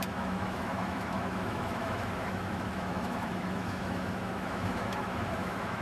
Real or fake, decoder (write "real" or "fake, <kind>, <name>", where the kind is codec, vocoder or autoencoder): fake, autoencoder, DAC-VAE